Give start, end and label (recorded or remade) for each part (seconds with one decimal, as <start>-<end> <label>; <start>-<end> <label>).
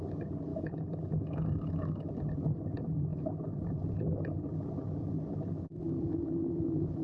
0.0-0.5 recorded; 0.5-2.1 remade; 2.1-7.0 recorded